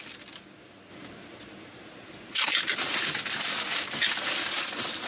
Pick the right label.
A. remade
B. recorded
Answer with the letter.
B